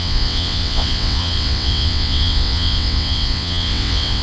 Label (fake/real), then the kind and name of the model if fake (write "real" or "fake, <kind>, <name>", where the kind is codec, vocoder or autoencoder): fake, vocoder, WaveNeXt